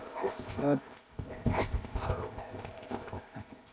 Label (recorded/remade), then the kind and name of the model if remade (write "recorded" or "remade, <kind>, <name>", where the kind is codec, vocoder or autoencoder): remade, codec, ZipCodec